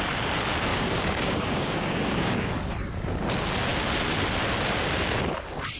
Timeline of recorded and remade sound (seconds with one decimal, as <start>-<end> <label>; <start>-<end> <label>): 0.0-0.7 recorded; 0.7-2.5 remade; 2.5-5.8 recorded